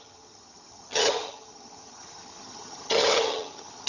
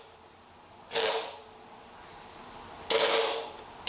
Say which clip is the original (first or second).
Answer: second